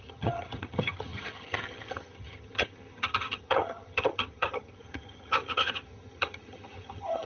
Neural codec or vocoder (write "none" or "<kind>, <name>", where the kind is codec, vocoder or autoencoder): vocoder, HiFi-GAN